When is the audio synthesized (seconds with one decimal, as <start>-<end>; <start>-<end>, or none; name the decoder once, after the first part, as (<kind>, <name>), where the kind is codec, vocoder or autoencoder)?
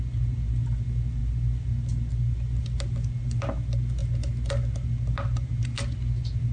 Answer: none